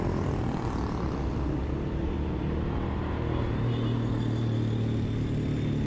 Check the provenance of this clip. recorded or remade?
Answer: recorded